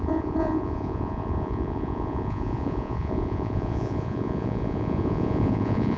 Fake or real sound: fake